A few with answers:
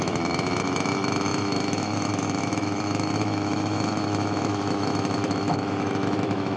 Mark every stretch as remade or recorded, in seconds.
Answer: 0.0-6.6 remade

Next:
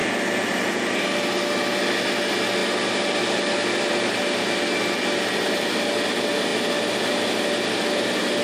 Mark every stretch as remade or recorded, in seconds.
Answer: 0.0-8.4 recorded

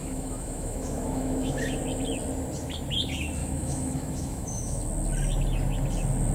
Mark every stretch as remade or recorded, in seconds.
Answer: 0.0-1.8 remade; 1.8-3.4 recorded; 3.4-4.8 remade; 4.8-6.3 recorded

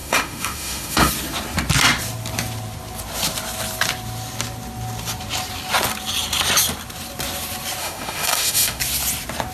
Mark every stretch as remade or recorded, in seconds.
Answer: 0.0-1.1 remade; 1.1-7.8 recorded; 7.8-8.8 remade; 8.8-9.5 recorded

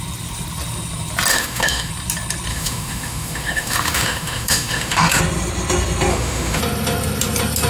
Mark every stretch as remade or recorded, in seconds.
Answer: 0.0-1.3 recorded; 1.3-1.9 remade; 1.9-2.5 recorded; 2.5-5.2 remade; 5.2-6.1 recorded; 6.1-6.6 remade; 6.6-7.7 recorded

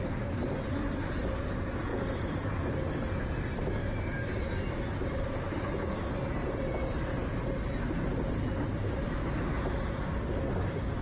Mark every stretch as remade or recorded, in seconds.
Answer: 0.0-11.0 recorded

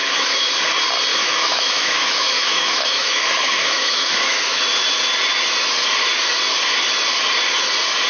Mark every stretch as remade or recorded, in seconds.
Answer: 0.0-0.6 remade; 0.6-1.1 recorded; 1.1-4.6 remade; 4.6-8.1 recorded

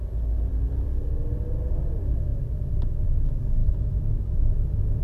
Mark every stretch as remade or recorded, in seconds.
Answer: 0.0-3.6 recorded; 3.6-4.5 remade; 4.5-5.0 recorded